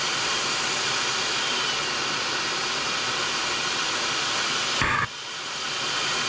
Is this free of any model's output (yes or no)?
yes